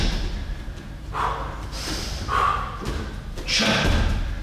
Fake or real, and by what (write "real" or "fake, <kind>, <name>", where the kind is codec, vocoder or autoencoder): real